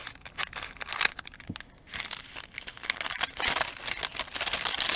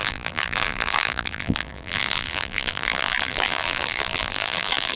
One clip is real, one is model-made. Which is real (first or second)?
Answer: first